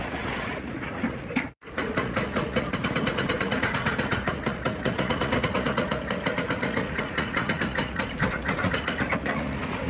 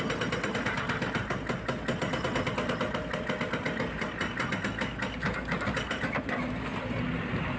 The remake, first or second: first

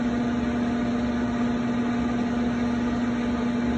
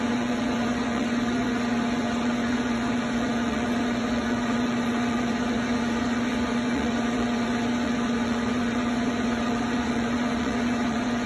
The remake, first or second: second